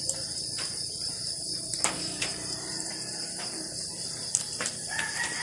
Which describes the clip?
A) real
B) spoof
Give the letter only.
B